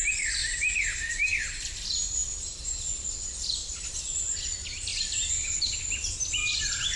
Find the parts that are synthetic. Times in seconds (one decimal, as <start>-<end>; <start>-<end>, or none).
0.4-1.3